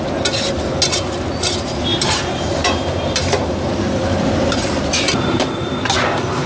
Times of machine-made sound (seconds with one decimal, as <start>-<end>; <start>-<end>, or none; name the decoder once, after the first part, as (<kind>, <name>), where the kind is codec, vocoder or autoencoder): 1.9-5.8 (vocoder, BigVGAN v2)